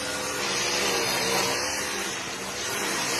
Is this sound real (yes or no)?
yes